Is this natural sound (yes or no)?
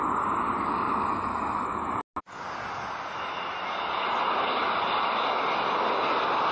yes